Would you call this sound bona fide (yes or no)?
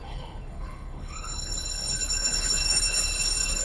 no